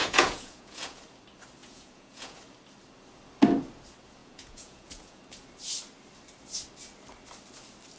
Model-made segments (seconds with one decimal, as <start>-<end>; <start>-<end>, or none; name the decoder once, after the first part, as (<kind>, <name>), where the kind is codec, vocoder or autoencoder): 0.0-1.0 (vocoder, Vocos); 1.6-2.4; 4.2-5.2